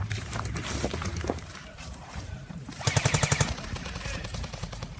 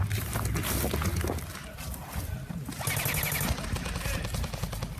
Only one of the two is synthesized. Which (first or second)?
first